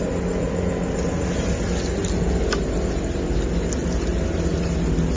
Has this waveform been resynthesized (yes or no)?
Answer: no